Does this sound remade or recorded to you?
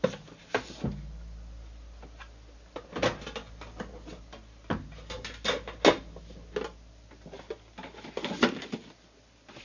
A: recorded